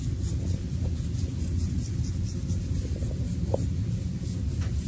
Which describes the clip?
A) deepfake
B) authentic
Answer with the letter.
B